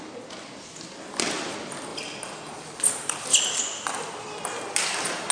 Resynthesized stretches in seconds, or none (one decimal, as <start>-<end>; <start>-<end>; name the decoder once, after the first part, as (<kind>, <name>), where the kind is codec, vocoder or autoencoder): none